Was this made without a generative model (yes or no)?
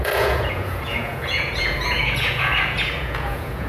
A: no